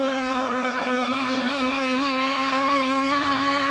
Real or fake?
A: fake